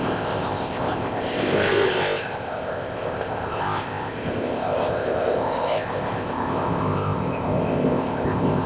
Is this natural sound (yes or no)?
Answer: no